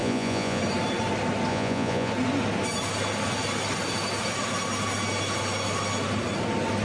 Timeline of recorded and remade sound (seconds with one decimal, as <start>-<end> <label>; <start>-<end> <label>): 0.0-0.6 remade; 0.6-1.5 recorded; 1.5-2.1 remade; 2.1-6.8 recorded